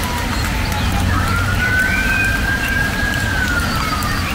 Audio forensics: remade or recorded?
recorded